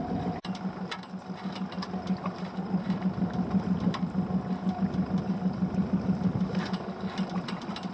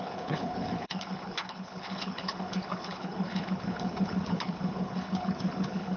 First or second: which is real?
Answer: first